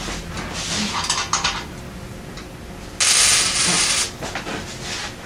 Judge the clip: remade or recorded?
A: recorded